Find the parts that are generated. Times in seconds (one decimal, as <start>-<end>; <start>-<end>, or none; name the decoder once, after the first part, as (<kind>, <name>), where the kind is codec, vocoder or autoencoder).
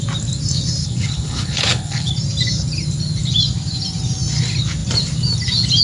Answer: 0.8-2.1 (codec, HILCodec)